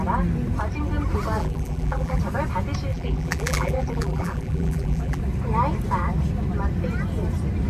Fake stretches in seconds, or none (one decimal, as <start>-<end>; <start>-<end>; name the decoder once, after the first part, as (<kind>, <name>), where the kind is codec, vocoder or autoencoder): 1.4-2.2 (vocoder, BigVGAN v2); 2.9-5.2